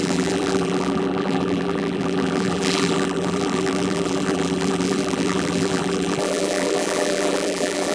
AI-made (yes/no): yes